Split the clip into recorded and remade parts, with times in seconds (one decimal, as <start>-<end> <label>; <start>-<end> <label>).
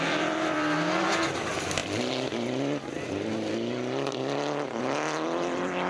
0.0-5.9 recorded